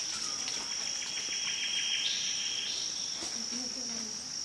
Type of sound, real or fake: real